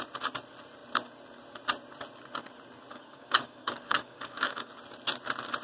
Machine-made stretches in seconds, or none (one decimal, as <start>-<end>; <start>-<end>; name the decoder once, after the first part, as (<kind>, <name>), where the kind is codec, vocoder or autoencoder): 2.9-4.7 (codec, DAC)